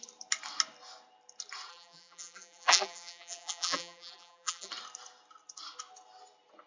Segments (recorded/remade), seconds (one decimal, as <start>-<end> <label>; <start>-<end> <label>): 0.0-1.7 recorded; 1.7-4.7 remade; 4.7-6.7 recorded